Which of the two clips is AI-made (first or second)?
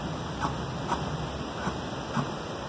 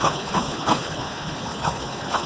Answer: second